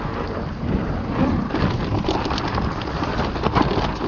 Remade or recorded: recorded